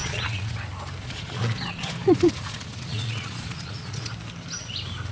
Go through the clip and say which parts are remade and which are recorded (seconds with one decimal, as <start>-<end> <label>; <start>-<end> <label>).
0.0-0.5 remade; 0.5-1.0 recorded; 1.0-4.1 remade; 4.1-5.1 recorded